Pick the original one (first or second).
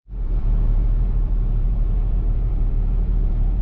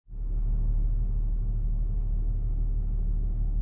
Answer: second